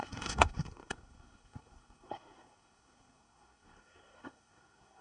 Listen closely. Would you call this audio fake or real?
fake